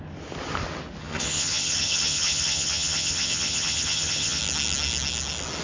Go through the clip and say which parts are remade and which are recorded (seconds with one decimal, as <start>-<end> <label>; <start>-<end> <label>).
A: 0.0-1.0 recorded; 1.0-4.4 remade; 4.4-5.6 recorded